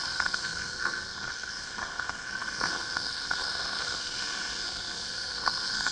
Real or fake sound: fake